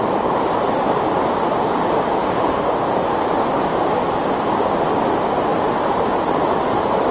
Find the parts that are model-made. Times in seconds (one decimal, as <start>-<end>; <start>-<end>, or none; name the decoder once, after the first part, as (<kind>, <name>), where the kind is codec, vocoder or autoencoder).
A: 2.2-3.0 (codec, DAC); 3.7-4.3